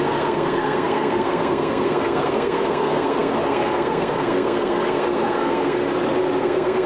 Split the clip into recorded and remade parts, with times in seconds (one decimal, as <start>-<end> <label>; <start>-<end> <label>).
0.0-5.8 remade; 5.8-6.4 recorded; 6.4-6.9 remade